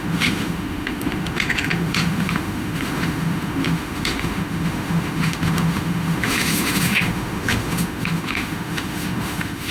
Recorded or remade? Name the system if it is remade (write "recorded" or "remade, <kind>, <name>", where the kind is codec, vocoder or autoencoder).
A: remade, autoencoder, DAC-VAE